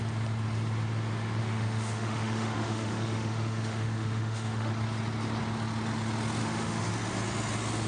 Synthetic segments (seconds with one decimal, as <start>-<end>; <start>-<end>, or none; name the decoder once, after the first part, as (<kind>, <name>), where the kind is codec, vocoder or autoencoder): 1.4-4.7 (autoencoder, DAC-VAE); 6.4-6.9